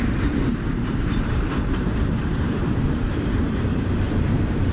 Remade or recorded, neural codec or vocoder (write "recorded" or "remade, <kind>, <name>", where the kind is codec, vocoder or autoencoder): remade, vocoder, BigVGAN v2